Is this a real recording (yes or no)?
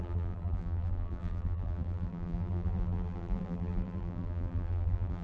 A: no